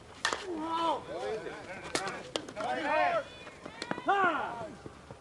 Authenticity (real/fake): real